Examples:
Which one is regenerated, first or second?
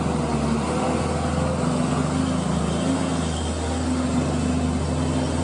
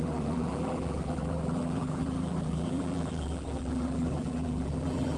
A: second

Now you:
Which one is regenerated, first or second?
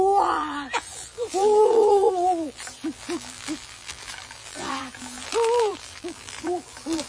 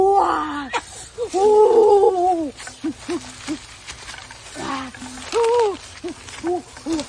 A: first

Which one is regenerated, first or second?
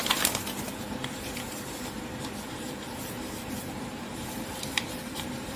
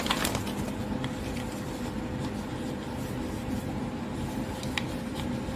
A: first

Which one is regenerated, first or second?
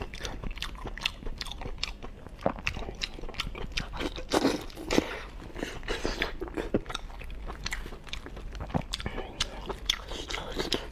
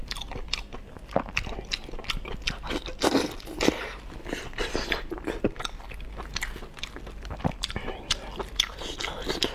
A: first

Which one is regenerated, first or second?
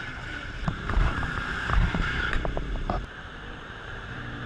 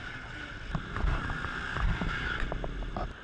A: first